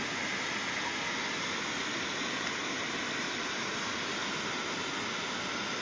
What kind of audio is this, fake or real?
real